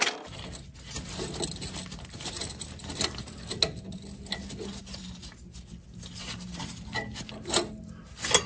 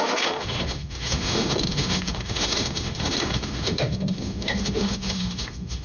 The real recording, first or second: first